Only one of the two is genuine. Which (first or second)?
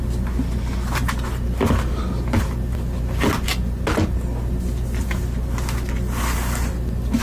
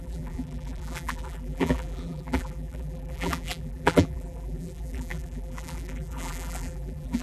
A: first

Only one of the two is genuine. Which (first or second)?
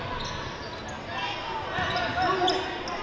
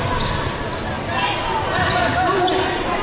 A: first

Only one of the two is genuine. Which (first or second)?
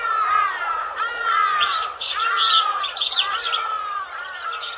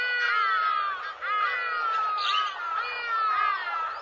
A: second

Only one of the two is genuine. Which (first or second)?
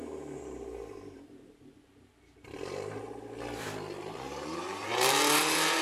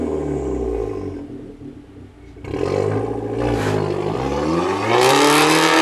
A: second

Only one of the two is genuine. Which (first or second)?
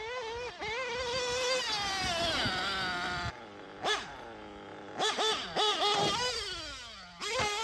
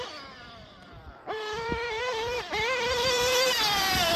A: first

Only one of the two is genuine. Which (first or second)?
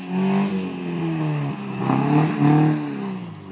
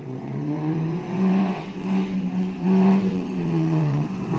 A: first